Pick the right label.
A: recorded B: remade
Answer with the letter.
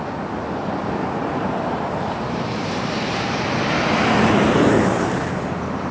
B